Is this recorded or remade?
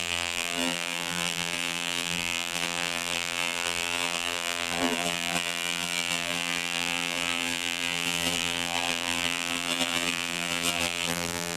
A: remade